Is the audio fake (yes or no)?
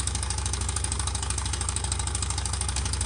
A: yes